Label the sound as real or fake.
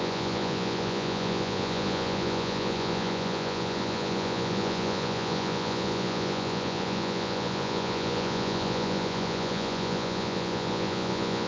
fake